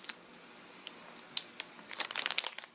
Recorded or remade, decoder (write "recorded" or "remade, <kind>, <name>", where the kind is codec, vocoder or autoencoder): recorded